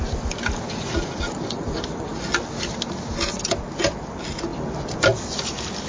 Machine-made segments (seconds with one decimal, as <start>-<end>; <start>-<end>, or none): none